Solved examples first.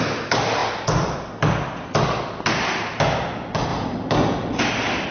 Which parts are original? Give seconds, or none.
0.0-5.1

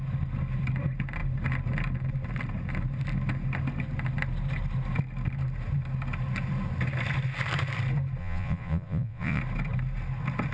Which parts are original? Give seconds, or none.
0.0-8.2; 9.4-10.5

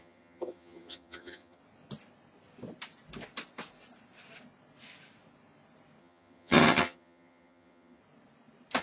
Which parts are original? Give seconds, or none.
1.6-6.0; 8.0-8.8

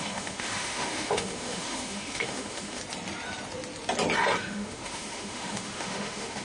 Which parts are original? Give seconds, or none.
2.8-4.4

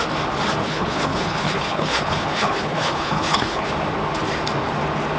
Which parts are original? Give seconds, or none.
0.0-0.6; 3.7-5.2

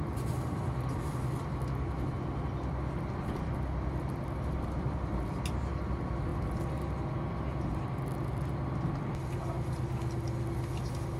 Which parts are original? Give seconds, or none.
0.0-11.2

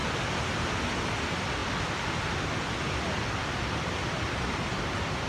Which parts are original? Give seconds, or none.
0.0-0.7; 1.6-4.8

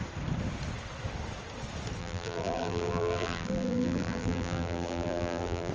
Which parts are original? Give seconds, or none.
0.0-2.0